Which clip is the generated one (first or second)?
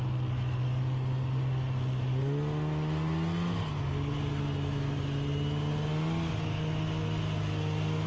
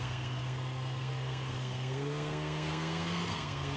second